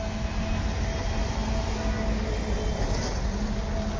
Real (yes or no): yes